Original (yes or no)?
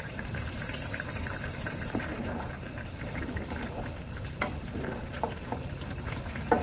no